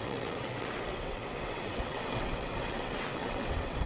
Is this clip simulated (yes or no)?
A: yes